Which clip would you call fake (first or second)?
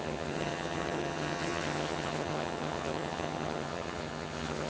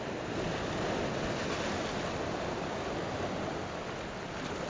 first